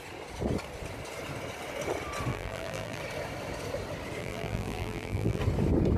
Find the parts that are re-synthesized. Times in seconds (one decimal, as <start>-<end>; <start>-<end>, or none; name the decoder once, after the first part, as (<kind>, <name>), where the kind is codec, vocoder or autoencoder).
2.3-3.0 (vocoder, BigVGAN v2); 4.2-5.4